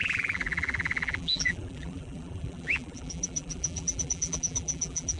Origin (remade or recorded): remade